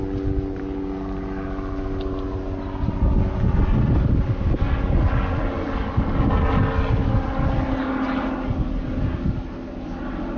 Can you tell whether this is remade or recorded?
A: recorded